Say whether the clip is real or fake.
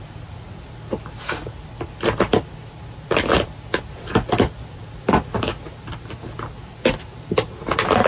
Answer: real